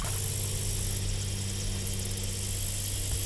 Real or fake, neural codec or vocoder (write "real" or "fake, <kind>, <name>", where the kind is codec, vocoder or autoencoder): real